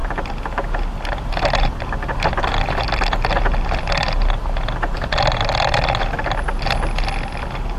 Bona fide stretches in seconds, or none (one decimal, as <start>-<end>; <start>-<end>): 0.0-7.8